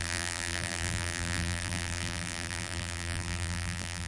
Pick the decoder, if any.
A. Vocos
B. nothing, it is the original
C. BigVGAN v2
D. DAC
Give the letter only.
C